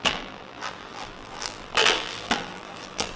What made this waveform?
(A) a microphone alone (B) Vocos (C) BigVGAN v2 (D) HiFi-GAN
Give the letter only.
C